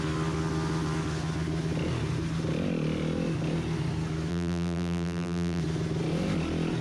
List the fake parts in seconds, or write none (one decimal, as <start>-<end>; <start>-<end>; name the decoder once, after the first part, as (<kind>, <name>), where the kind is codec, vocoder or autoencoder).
4.3-5.6 (vocoder, BigVGAN v2)